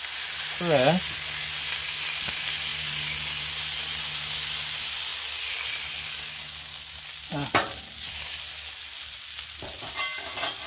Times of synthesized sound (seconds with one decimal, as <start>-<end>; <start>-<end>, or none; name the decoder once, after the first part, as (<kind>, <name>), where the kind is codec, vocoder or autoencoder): none